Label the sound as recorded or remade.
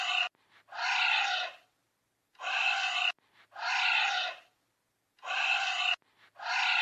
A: recorded